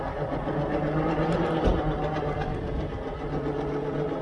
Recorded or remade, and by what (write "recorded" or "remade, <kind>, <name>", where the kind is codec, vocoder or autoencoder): recorded